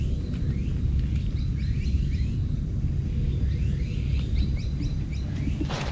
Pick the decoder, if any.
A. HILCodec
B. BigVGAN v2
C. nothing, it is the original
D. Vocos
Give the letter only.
C